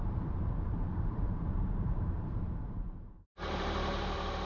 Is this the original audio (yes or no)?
no